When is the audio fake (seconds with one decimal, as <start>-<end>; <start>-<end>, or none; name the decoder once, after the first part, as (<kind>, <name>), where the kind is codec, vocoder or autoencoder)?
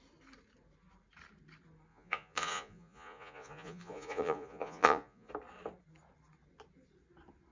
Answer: 1.9-5.3 (vocoder, Vocos)